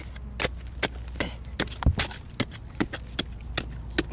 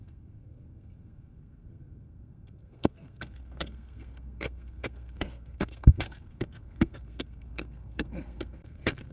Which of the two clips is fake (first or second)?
second